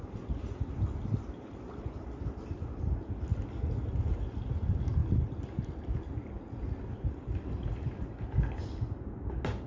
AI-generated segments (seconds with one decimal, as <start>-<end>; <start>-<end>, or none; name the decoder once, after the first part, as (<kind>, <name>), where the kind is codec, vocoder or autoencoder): none